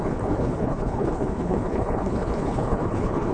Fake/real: fake